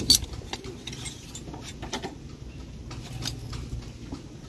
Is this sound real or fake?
real